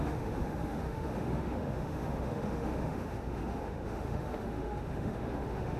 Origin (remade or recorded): remade